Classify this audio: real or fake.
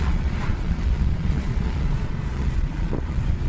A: fake